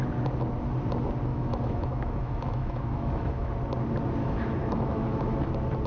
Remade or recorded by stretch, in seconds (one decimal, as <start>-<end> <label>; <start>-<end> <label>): 0.0-1.3 recorded; 1.3-3.5 remade; 3.5-4.2 recorded; 4.2-5.5 remade; 5.5-5.9 recorded